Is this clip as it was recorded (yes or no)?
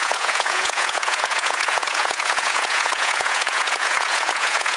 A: no